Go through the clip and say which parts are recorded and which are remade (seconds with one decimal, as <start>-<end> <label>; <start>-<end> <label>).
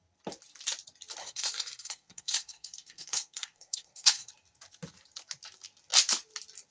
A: 0.0-1.2 recorded; 1.2-4.3 remade; 4.3-6.7 recorded